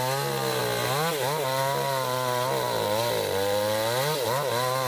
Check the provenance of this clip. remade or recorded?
recorded